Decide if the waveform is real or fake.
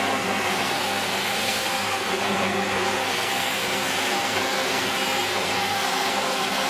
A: fake